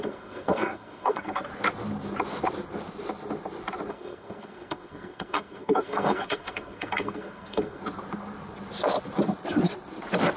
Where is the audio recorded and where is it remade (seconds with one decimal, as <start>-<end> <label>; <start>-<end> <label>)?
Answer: 0.0-1.5 remade; 1.5-3.9 recorded; 3.9-7.8 remade; 7.8-10.4 recorded